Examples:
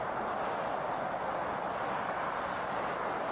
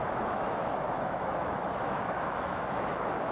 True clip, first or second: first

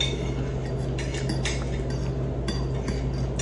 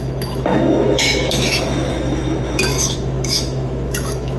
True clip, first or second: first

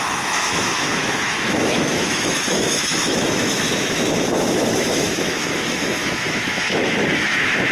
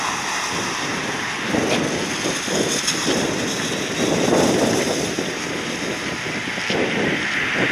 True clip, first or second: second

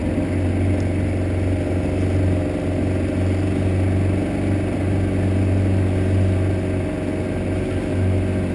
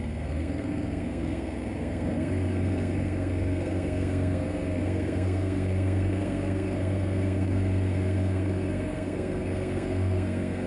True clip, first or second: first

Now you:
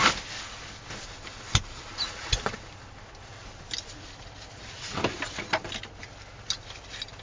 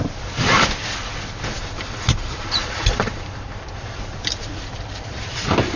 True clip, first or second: first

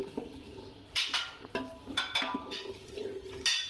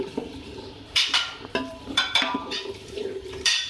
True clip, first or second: first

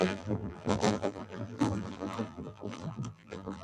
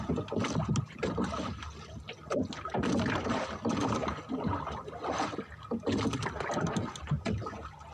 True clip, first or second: second